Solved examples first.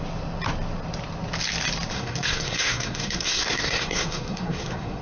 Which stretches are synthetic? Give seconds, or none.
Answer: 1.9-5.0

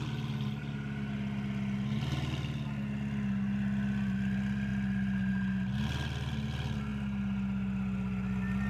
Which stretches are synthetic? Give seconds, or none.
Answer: none

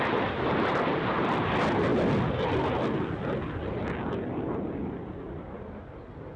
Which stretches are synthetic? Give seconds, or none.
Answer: none